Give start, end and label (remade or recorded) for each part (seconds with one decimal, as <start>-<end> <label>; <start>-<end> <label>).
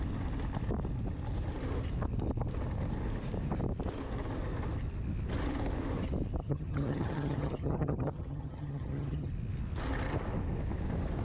0.0-6.4 recorded; 6.4-9.3 remade; 9.3-11.2 recorded